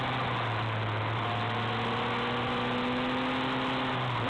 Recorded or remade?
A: recorded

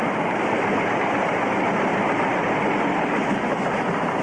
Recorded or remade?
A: recorded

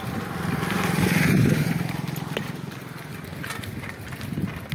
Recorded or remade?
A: recorded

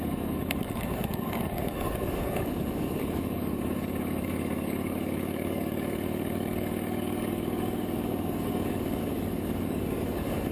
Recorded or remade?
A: remade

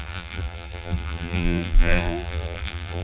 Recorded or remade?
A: remade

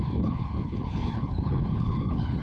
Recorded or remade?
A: remade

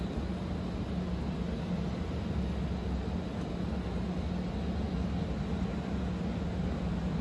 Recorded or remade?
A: recorded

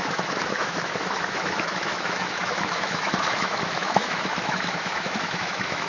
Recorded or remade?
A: remade